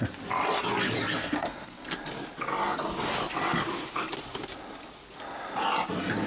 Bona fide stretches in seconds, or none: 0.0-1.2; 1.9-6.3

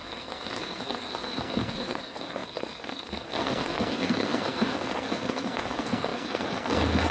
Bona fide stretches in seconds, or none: none

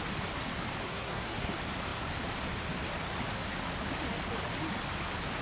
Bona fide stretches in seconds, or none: 0.0-0.9; 1.5-5.4

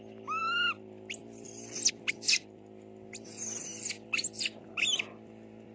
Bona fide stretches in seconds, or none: 0.0-5.7